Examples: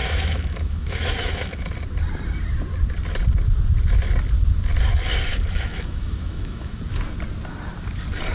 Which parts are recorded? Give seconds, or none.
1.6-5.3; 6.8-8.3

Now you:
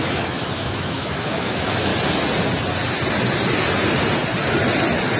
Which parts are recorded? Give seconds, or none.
1.9-5.2